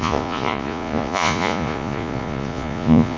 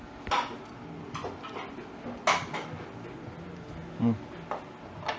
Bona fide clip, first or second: second